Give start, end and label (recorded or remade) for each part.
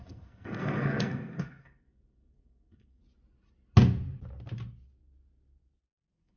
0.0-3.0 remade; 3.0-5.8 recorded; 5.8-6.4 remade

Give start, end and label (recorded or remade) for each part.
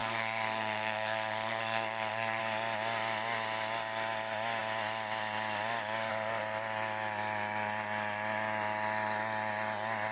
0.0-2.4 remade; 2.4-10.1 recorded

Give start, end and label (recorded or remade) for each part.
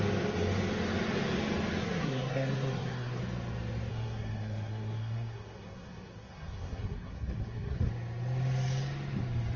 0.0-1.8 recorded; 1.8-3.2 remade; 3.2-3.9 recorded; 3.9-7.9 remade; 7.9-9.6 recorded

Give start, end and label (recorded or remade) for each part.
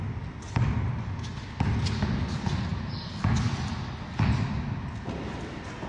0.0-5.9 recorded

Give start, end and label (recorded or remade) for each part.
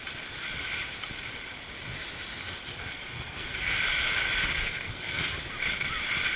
0.0-2.8 recorded; 2.8-3.8 remade; 3.8-4.5 recorded; 4.5-5.3 remade; 5.3-6.4 recorded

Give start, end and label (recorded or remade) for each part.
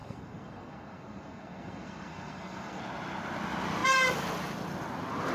0.0-2.8 remade; 2.8-5.3 recorded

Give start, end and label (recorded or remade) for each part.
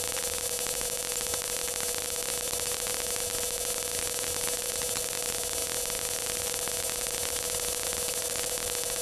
0.0-9.0 recorded